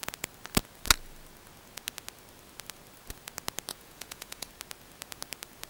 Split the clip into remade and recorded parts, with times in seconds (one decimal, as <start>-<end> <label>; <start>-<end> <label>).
0.0-3.7 recorded; 3.7-4.5 remade; 4.5-5.7 recorded